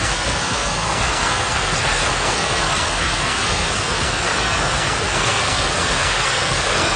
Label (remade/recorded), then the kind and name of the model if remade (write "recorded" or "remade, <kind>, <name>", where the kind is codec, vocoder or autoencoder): remade, codec, SNAC